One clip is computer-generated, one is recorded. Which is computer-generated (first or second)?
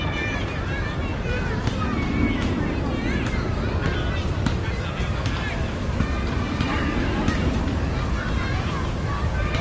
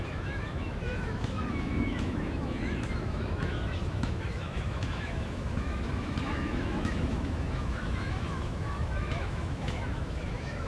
second